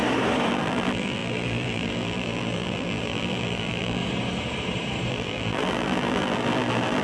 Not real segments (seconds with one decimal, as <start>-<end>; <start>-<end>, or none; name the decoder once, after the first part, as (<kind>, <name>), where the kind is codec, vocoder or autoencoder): 0.5-4.0 (vocoder, BigVGAN v2); 5.1-7.0